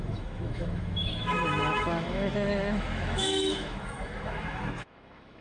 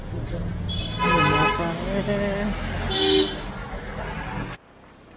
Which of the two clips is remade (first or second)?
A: first